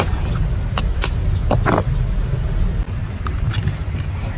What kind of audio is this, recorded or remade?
recorded